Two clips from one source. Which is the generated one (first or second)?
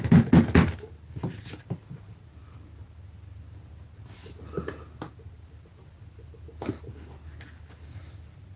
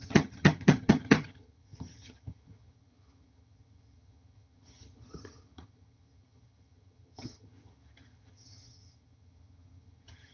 second